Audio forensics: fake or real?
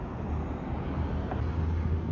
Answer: real